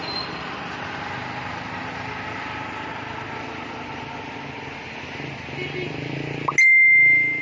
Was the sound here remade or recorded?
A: recorded